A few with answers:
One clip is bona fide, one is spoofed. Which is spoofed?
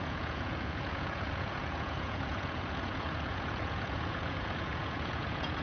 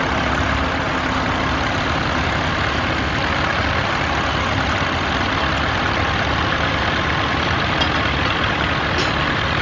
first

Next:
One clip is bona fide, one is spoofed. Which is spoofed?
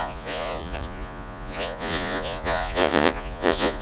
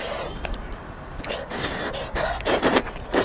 first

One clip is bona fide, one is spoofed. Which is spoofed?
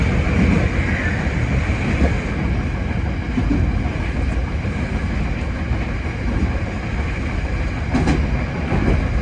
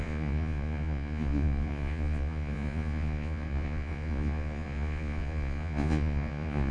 second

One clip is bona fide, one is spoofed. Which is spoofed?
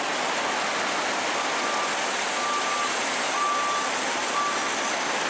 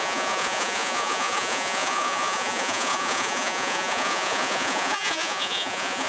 second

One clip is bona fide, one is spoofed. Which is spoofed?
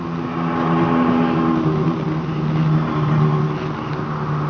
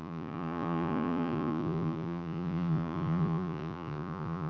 second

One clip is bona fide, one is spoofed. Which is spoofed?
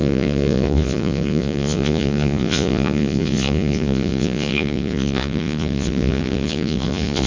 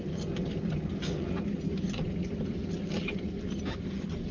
first